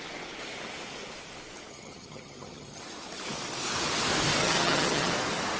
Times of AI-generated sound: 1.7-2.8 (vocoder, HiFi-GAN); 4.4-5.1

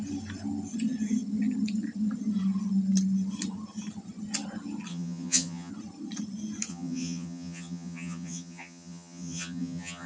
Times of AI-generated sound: 4.9-5.7 (vocoder, HiFi-GAN); 6.7-10.1

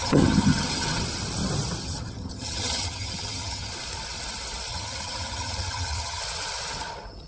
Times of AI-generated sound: 0.0-1.0 (vocoder, HiFi-GAN); 1.8-3.7; 4.7-6.2

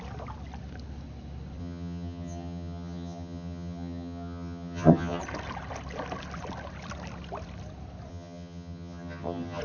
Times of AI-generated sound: 1.6-5.2 (vocoder, HiFi-GAN); 8.1-9.6

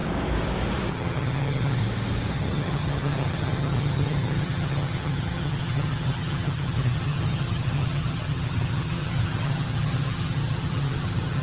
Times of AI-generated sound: 0.9-1.8 (vocoder, HiFi-GAN); 2.3-11.4